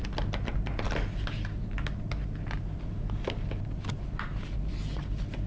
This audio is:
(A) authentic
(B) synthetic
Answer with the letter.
A